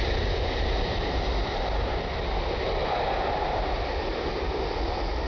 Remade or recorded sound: recorded